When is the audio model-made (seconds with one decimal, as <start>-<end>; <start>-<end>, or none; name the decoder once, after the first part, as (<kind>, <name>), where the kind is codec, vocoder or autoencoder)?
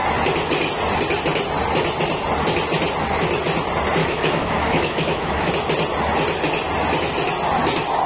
4.0-5.5 (autoencoder, DAC-VAE)